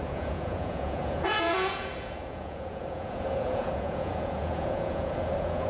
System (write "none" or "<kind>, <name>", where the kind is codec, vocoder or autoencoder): vocoder, Vocos